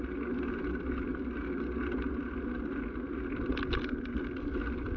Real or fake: real